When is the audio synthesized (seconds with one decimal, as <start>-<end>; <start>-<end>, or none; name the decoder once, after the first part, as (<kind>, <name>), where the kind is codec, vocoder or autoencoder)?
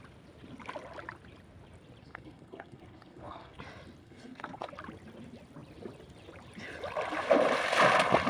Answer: 2.0-3.6 (codec, SNAC); 4.0-4.7